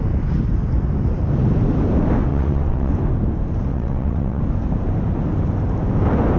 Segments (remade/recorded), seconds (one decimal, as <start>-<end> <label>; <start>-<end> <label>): 0.0-2.3 recorded; 2.3-2.9 remade; 2.9-3.7 recorded; 3.7-4.4 remade; 4.4-6.4 recorded